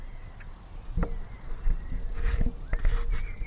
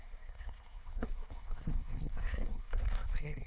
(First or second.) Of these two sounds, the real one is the first